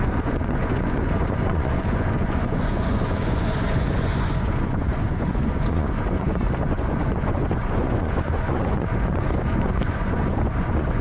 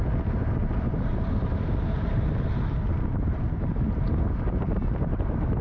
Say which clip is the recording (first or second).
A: second